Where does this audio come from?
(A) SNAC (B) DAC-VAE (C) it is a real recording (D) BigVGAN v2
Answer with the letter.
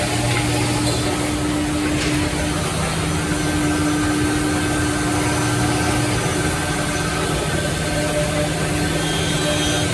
C